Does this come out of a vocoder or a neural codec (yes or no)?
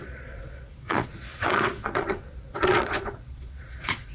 yes